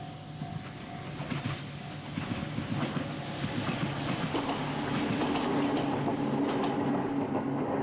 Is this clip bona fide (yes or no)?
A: yes